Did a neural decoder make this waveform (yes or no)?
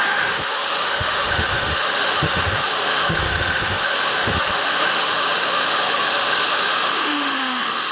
yes